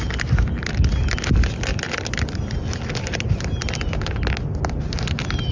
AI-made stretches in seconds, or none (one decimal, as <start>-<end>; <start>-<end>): none